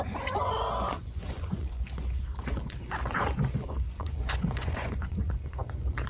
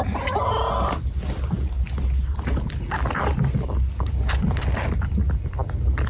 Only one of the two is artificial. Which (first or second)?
first